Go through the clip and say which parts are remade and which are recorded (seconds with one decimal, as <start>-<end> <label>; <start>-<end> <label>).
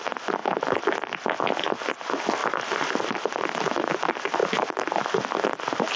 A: 0.0-6.0 recorded